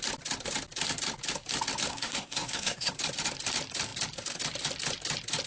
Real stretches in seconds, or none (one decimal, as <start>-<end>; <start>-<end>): 0.0-1.9; 2.9-5.5